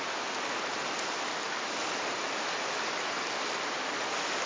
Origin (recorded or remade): recorded